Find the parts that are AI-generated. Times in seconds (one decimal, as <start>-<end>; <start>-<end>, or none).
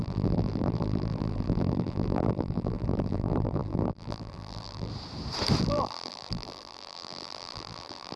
0.0-4.9; 5.6-8.2